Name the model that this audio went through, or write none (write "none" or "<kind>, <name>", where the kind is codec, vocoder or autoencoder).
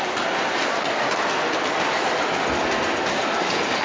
none